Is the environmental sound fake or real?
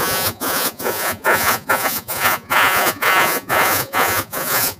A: fake